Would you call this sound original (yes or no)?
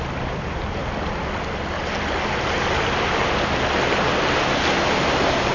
yes